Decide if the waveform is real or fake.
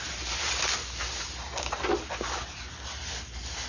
real